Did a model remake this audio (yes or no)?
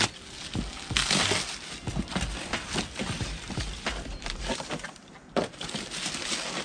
no